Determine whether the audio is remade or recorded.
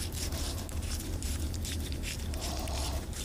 remade